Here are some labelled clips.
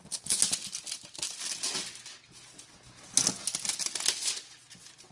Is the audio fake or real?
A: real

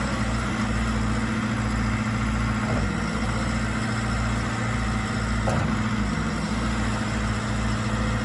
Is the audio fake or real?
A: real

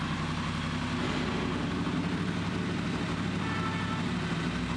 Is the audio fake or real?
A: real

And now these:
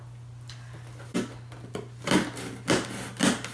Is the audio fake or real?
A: real